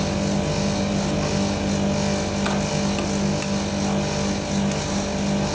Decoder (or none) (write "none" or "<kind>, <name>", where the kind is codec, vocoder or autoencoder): none